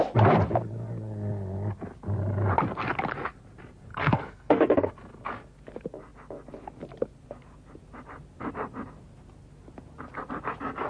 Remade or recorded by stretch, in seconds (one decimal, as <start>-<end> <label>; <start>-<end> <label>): 0.0-3.9 recorded; 3.9-4.9 remade; 4.9-10.9 recorded